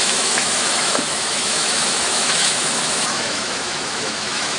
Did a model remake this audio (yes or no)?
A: yes